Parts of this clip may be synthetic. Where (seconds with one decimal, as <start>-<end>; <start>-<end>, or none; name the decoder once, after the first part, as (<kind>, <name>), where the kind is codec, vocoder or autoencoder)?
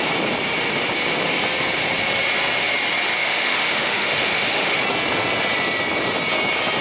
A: 3.2-4.8 (autoencoder, DAC-VAE)